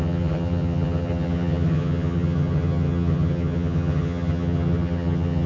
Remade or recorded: remade